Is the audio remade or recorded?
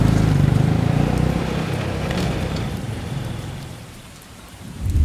remade